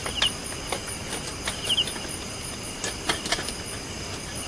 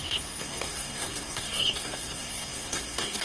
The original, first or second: first